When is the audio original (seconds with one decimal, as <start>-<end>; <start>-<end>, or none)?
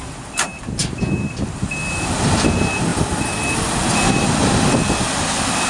0.0-5.7